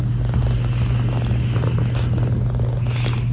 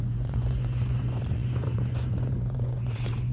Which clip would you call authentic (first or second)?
first